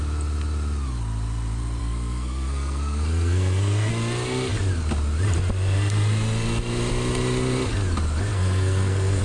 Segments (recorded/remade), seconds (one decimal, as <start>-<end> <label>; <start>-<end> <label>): 0.0-1.8 recorded; 1.8-3.9 remade; 3.9-8.3 recorded; 8.3-9.2 remade